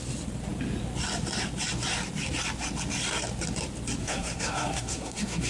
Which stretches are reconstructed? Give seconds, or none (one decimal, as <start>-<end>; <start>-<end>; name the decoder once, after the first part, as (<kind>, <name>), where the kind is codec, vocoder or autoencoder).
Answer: 4.0-5.5 (codec, SNAC)